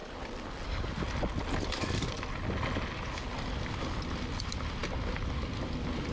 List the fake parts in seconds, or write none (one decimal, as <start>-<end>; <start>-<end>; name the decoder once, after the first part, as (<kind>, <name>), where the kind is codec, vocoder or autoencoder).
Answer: none